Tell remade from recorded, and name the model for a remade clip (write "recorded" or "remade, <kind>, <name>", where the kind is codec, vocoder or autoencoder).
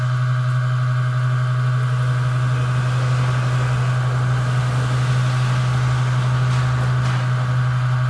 recorded